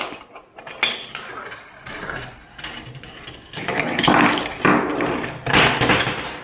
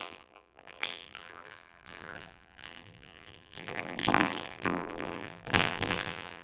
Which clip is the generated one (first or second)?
second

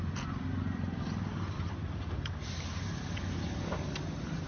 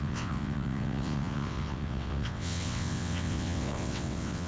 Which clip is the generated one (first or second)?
second